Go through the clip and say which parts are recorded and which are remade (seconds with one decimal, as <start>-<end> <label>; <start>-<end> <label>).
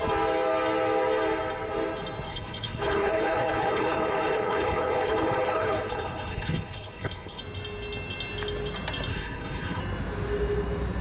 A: 0.0-2.3 recorded; 2.3-7.4 remade; 7.4-9.1 recorded; 9.1-9.8 remade; 9.8-11.0 recorded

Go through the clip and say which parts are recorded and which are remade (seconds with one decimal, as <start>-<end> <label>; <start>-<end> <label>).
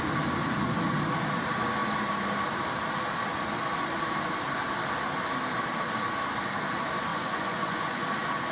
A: 0.0-7.1 recorded; 7.1-8.0 remade; 8.0-8.5 recorded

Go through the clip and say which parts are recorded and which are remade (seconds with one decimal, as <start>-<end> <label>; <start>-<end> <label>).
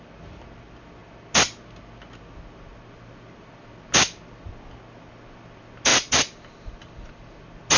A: 0.0-7.8 recorded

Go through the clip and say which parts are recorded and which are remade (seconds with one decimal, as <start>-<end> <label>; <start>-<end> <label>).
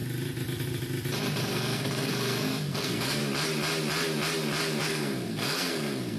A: 0.0-1.4 recorded; 1.4-3.2 remade; 3.2-4.8 recorded; 4.8-6.2 remade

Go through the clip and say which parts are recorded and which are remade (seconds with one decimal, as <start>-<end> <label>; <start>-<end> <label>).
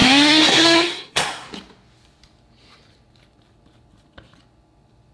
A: 0.0-1.5 remade; 1.5-5.1 recorded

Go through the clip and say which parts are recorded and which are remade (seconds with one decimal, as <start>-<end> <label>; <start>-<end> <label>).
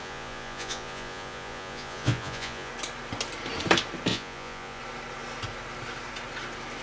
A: 0.0-2.7 remade; 2.7-4.1 recorded; 4.1-4.8 remade; 4.8-6.8 recorded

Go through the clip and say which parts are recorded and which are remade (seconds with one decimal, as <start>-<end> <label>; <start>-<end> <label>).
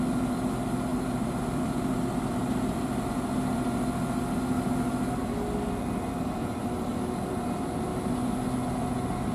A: 0.0-0.9 recorded; 0.9-3.1 remade; 3.1-9.3 recorded